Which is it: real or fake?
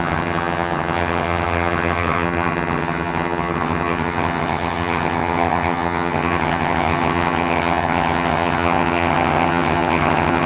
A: fake